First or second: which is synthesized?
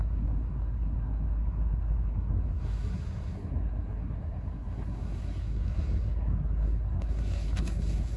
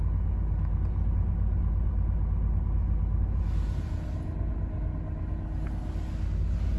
first